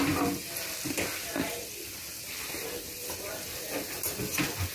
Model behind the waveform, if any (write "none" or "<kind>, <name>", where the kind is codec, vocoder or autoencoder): none